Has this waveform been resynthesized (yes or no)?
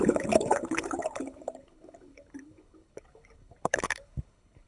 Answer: yes